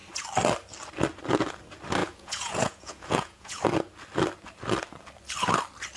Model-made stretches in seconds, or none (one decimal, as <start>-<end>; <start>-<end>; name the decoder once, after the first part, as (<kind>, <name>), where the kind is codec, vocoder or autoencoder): 2.0-3.6 (vocoder, Vocos)